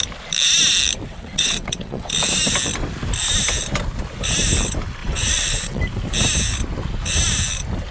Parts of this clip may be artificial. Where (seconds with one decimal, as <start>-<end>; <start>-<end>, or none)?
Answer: 1.1-2.1; 5.0-5.8